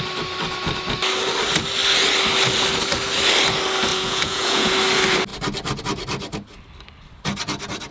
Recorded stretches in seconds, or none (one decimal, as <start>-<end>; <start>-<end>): 0.0-3.9; 4.7-7.9